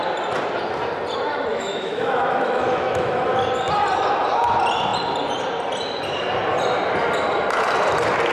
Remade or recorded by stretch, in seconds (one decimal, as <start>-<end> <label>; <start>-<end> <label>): 0.0-1.5 recorded; 1.5-3.2 remade; 3.2-8.3 recorded

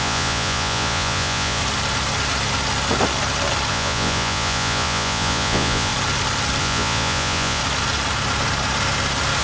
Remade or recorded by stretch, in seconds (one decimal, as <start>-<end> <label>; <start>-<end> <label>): 0.0-1.6 remade; 1.6-3.7 recorded; 3.7-5.9 remade; 5.9-6.6 recorded; 6.6-7.6 remade; 7.6-9.4 recorded

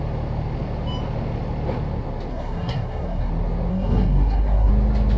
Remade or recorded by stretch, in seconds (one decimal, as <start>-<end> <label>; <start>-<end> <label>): 0.0-2.3 recorded; 2.3-3.3 remade; 3.3-3.7 recorded; 3.7-4.7 remade; 4.7-5.2 recorded

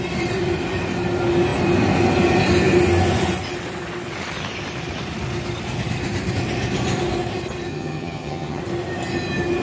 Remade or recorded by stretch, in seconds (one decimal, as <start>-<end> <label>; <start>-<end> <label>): 0.0-7.7 recorded; 7.7-8.6 remade; 8.6-9.6 recorded

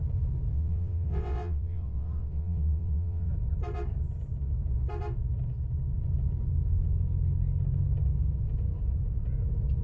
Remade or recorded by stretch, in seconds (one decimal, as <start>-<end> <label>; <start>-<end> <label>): 0.0-0.5 recorded; 0.5-3.3 remade; 3.3-9.8 recorded

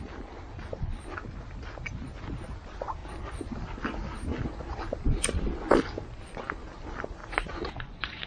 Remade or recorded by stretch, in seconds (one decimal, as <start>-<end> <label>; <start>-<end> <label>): 0.0-7.2 recorded; 7.2-8.3 remade

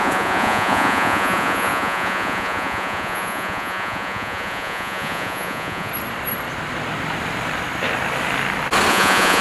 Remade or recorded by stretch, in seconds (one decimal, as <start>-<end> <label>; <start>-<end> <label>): 0.0-5.9 remade; 5.9-8.9 recorded; 8.9-9.4 remade